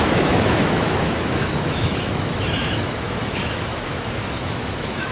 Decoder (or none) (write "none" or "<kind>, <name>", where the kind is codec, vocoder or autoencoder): autoencoder, DAC-VAE